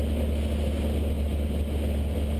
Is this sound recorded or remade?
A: recorded